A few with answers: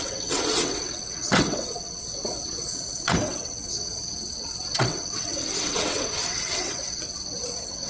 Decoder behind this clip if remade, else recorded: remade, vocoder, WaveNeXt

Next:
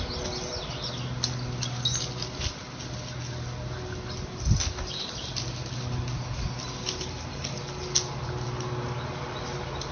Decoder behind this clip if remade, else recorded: recorded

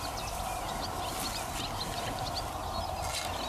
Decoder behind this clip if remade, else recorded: recorded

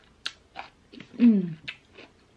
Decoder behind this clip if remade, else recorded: recorded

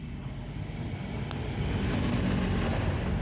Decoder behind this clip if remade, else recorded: recorded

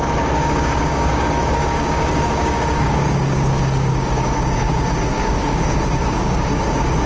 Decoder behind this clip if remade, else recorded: remade, codec, DAC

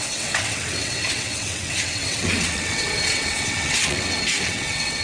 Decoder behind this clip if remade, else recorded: remade, vocoder, WaveNeXt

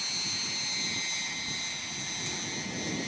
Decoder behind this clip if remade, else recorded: recorded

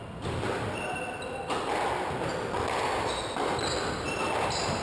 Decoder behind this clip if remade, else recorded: recorded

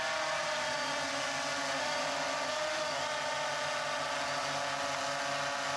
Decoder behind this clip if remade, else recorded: recorded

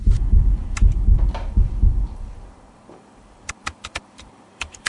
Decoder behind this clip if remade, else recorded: remade, vocoder, BigVGAN v2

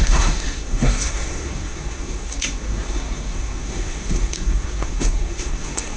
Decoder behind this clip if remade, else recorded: remade, codec, SNAC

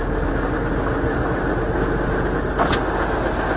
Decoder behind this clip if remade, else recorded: recorded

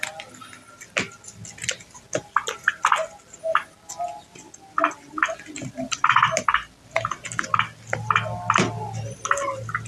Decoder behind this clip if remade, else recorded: recorded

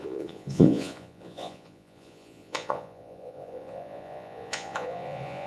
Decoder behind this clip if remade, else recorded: remade, vocoder, Vocos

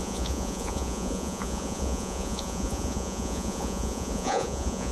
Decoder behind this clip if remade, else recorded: remade, vocoder, Vocos